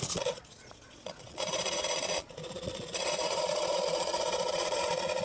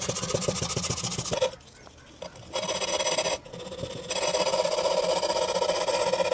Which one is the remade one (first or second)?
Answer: first